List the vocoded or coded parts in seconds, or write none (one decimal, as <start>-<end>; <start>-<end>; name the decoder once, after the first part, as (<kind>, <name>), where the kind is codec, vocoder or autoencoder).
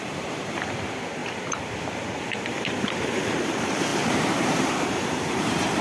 0.0-5.8 (vocoder, BigVGAN v2)